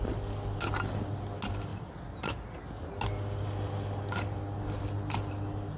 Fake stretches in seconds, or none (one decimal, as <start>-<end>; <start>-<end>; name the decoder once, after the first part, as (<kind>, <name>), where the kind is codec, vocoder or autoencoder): none